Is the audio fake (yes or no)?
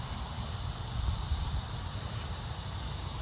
yes